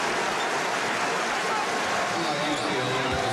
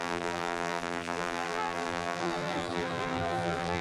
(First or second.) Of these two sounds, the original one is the first